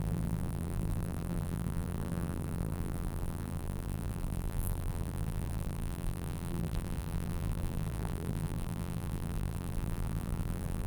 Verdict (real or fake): fake